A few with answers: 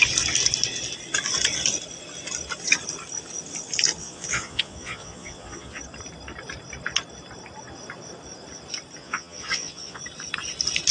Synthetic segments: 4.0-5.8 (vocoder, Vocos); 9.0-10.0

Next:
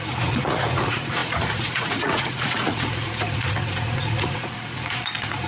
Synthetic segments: 0.0-5.5 (vocoder, Vocos)

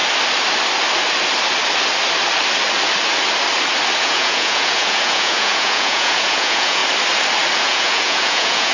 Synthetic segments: 4.0-6.8 (vocoder, Vocos); 7.6-8.7

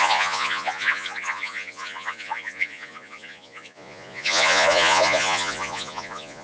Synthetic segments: 0.0-6.4 (vocoder, Vocos)

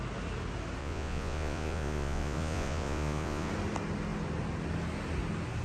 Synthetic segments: 0.8-3.5 (vocoder, Vocos)